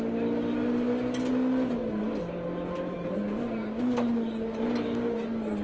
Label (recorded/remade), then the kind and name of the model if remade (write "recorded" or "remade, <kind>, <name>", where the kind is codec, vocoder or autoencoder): recorded